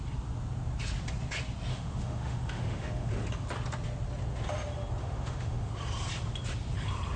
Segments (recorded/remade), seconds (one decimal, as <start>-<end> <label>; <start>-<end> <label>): 0.0-1.7 recorded; 1.7-3.1 remade; 3.1-5.0 recorded; 5.0-5.7 remade; 5.7-7.2 recorded